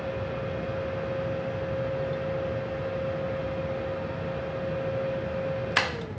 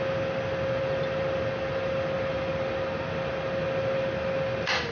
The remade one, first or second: second